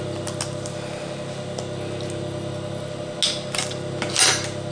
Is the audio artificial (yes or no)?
no